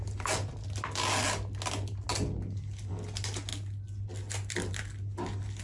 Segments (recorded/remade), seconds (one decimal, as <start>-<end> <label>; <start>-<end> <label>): 0.0-5.6 recorded